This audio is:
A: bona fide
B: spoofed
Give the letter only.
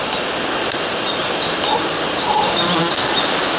A